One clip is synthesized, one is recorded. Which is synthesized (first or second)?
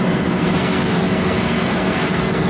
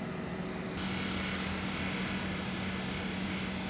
first